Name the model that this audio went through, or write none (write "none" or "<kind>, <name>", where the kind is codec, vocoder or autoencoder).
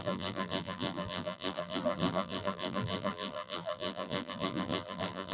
vocoder, BigVGAN v2